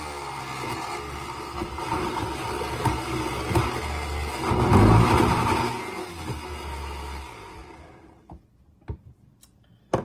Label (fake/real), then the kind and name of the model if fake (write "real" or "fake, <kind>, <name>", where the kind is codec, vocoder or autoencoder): real